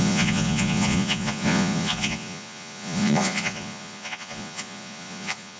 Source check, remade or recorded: remade